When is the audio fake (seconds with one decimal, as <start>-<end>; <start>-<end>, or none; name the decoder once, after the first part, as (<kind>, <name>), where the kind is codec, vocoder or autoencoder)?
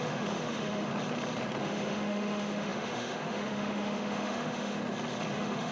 0.0-0.9 (autoencoder, DAC-VAE); 1.6-4.8; 5.3-5.7